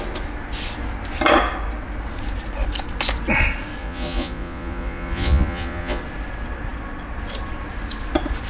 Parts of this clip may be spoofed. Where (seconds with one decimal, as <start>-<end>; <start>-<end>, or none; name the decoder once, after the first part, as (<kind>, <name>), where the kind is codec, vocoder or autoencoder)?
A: 3.8-6.0 (vocoder, Vocos)